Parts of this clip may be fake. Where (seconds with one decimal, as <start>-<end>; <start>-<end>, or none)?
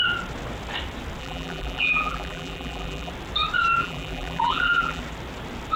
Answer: 1.2-3.1; 3.8-5.0